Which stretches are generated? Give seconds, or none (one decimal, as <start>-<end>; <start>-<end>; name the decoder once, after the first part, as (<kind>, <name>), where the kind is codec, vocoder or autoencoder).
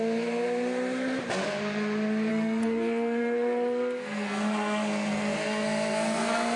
2.3-6.6 (codec, SNAC)